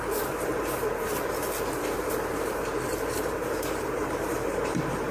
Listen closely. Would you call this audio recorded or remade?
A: remade